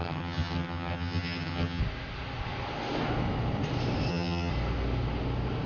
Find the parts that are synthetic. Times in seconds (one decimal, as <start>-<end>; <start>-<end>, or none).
0.0-1.8; 4.1-4.5